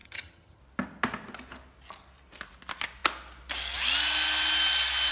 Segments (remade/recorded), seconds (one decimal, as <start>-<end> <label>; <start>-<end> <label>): 0.0-0.6 remade; 0.6-5.1 recorded